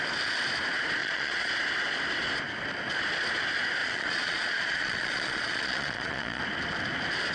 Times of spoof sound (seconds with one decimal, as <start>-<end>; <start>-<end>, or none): 1.0-1.5; 3.8-6.4